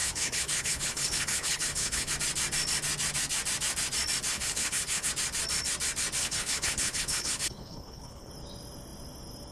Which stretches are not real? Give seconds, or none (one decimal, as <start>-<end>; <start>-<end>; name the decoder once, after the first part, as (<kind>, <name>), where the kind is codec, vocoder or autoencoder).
0.0-2.1 (codec, HILCodec); 4.3-5.1; 6.2-8.3